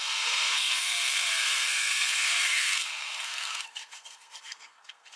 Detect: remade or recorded remade